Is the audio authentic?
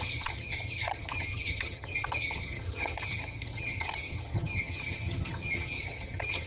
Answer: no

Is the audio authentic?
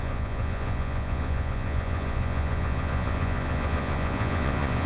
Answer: no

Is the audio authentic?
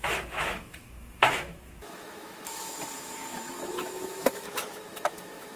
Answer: no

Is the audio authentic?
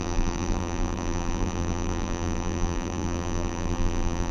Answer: no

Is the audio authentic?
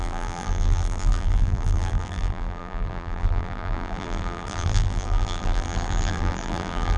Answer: no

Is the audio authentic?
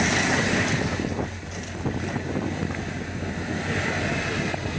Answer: yes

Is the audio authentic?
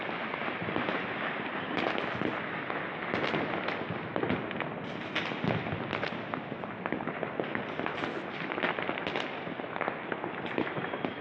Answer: yes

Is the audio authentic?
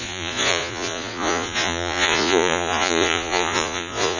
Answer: no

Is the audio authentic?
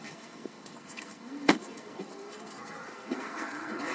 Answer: no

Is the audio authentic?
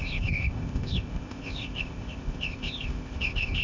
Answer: no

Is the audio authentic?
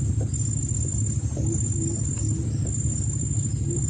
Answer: yes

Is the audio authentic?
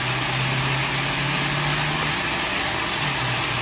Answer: yes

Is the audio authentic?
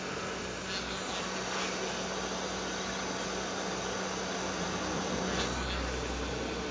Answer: yes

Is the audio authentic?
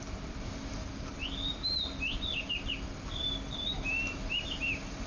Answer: yes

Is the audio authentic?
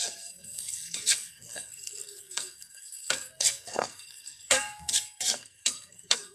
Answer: no